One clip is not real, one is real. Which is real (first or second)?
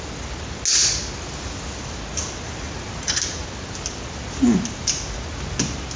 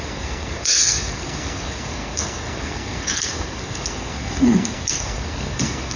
first